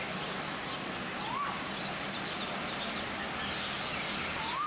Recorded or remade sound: recorded